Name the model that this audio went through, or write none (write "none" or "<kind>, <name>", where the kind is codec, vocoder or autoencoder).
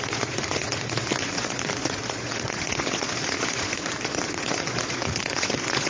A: vocoder, Vocos